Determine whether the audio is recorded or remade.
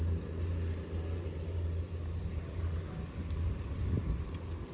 recorded